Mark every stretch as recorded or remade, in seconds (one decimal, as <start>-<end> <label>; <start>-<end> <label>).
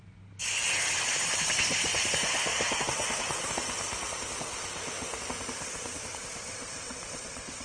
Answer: 0.0-2.5 recorded; 2.5-3.5 remade; 3.5-5.6 recorded; 5.6-7.6 remade